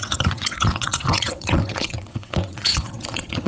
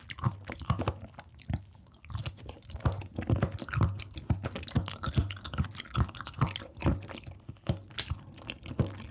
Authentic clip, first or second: second